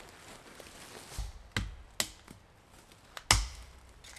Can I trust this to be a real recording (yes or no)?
yes